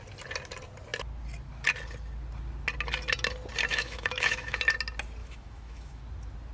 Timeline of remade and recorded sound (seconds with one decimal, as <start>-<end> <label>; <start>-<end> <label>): 0.0-3.7 recorded; 3.7-4.6 remade; 4.6-5.2 recorded; 5.2-6.0 remade; 6.0-6.5 recorded